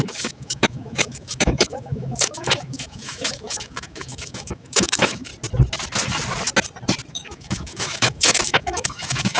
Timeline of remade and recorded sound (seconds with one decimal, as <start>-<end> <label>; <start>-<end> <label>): 0.0-5.3 remade; 5.3-7.1 recorded; 7.1-9.4 remade